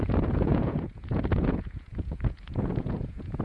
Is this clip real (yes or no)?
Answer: no